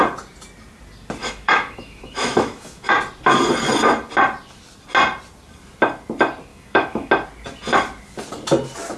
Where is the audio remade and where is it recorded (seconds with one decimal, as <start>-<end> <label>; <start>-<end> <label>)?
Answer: 0.0-1.2 recorded; 1.2-2.9 remade; 2.9-6.5 recorded; 6.5-7.1 remade; 7.1-9.0 recorded